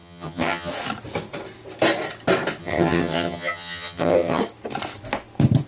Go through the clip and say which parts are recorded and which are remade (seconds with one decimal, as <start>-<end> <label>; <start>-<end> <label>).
0.0-0.7 remade; 0.7-2.6 recorded; 2.6-4.4 remade; 4.4-5.7 recorded

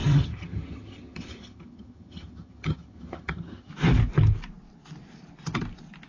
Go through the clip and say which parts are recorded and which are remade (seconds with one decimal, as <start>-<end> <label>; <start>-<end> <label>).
0.0-3.7 remade; 3.7-6.1 recorded

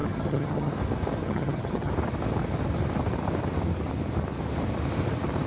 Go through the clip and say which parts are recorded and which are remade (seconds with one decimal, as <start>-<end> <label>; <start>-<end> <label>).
0.0-0.7 remade; 0.7-1.2 recorded; 1.2-1.9 remade; 1.9-5.5 recorded